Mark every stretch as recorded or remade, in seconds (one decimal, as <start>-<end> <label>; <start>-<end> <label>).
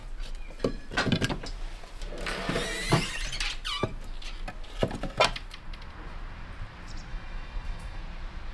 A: 0.0-7.1 recorded; 7.1-8.0 remade; 8.0-8.5 recorded